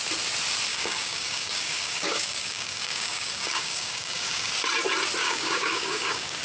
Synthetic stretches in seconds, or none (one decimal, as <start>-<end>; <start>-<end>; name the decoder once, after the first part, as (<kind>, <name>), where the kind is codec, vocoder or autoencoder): 0.7-4.5 (codec, DAC); 5.2-6.4